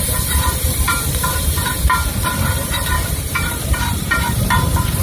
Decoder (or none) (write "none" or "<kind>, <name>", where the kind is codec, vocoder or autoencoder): vocoder, BigVGAN v2